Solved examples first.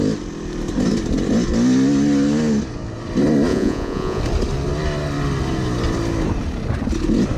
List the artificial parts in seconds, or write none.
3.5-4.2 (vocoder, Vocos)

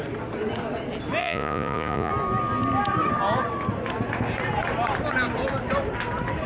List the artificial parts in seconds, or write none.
1.2-2.1 (vocoder, Vocos)

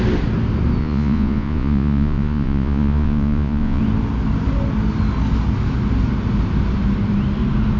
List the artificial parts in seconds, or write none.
0.8-3.8 (vocoder, Vocos)